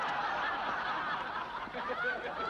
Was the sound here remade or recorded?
recorded